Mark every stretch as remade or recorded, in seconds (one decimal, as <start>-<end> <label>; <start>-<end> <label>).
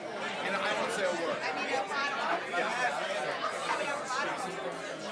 0.0-5.1 recorded